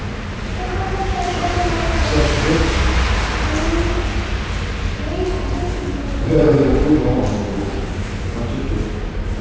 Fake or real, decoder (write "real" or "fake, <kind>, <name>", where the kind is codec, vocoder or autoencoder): real